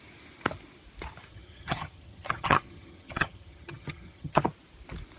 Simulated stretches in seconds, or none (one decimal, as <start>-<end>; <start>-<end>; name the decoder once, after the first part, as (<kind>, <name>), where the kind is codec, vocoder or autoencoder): 1.3-4.4 (vocoder, HiFi-GAN)